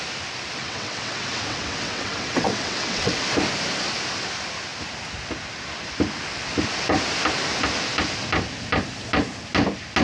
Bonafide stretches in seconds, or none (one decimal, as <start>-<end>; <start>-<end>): 0.0-0.6; 3.3-10.0